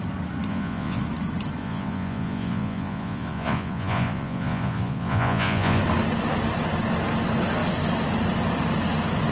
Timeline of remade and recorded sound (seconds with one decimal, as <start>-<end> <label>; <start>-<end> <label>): 0.0-0.5 recorded; 0.5-1.0 remade; 1.0-1.6 recorded; 1.6-5.8 remade; 5.8-9.3 recorded